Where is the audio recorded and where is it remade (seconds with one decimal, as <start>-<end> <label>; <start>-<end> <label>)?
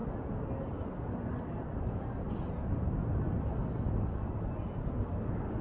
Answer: 0.0-5.6 recorded